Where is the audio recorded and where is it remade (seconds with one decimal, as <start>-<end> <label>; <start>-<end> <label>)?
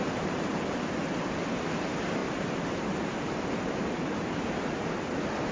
0.0-0.5 remade; 0.5-1.8 recorded; 1.8-5.5 remade